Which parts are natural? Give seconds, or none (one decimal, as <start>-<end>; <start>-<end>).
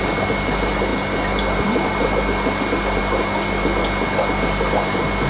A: 0.0-5.3